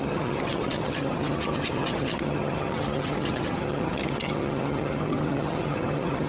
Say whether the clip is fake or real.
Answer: fake